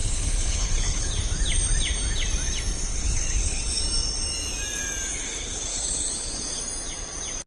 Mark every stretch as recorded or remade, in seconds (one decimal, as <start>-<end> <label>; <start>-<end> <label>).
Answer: 0.0-1.2 remade; 1.2-2.9 recorded; 2.9-3.8 remade; 3.8-5.1 recorded; 5.1-6.6 remade; 6.6-7.5 recorded